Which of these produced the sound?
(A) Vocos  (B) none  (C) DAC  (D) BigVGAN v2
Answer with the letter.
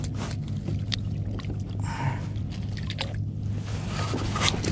B